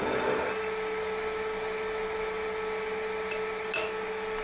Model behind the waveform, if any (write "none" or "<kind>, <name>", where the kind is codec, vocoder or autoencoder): none